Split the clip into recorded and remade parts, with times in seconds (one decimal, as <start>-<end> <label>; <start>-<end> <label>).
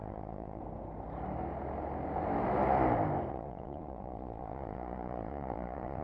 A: 0.0-0.6 remade; 0.6-3.3 recorded; 3.3-6.0 remade